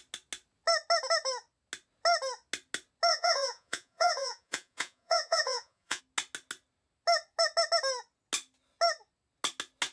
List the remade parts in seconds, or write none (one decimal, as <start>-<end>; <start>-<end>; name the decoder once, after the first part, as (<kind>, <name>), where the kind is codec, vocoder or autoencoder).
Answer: 3.1-6.0 (vocoder, Vocos)